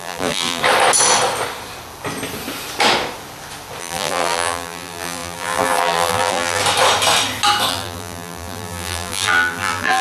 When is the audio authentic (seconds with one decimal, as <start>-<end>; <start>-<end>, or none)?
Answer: 0.6-3.8; 6.6-7.7